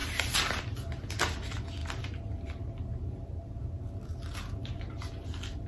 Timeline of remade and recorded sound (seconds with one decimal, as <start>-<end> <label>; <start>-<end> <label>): 0.0-5.7 recorded